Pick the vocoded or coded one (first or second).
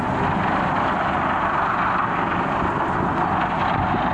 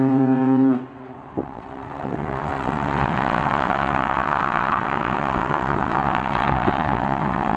second